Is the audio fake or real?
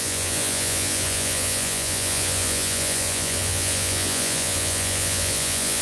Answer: fake